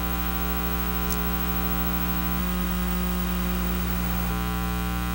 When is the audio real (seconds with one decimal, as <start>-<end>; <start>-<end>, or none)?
0.0-2.4; 4.3-5.1